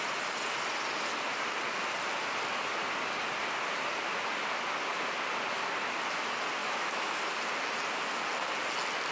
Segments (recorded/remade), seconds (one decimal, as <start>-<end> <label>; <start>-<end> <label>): 0.0-6.6 recorded; 6.6-7.2 remade; 7.2-9.1 recorded